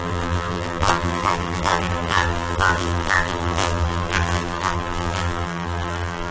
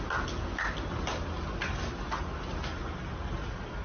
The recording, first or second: second